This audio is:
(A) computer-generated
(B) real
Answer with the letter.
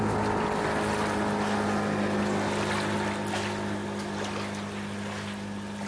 B